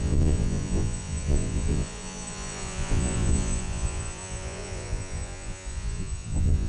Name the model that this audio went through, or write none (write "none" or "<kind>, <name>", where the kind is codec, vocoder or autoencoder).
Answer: vocoder, Vocos